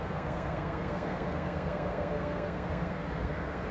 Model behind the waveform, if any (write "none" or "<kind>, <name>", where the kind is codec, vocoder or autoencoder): codec, SNAC